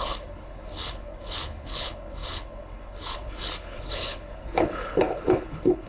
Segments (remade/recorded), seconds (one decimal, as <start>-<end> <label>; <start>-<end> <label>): 0.0-5.9 remade